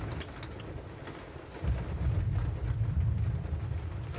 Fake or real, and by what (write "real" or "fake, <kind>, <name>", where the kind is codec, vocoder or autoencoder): real